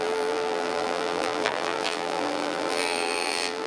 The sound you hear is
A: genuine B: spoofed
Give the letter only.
B